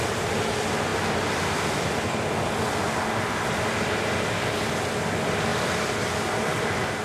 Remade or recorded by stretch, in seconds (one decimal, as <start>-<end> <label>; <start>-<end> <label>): 0.0-7.0 recorded